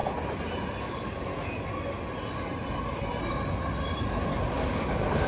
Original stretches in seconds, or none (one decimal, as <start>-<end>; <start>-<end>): 0.0-0.8; 1.3-4.5